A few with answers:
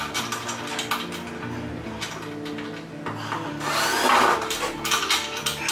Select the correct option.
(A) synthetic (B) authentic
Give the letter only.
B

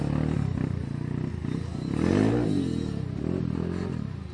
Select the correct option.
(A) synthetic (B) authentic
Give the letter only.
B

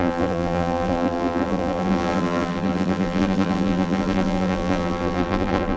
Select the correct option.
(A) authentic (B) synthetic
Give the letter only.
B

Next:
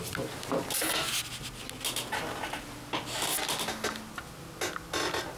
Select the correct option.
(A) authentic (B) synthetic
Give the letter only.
A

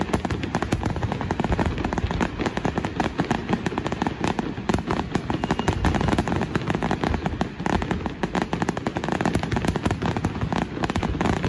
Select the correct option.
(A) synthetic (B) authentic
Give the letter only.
B